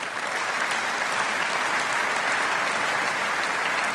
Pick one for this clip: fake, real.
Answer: real